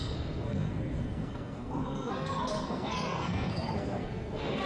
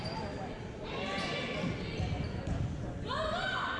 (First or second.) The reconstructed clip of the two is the first